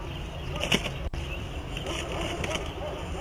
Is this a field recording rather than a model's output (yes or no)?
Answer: yes